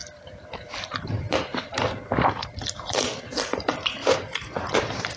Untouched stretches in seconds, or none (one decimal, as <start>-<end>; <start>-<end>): 3.1-4.0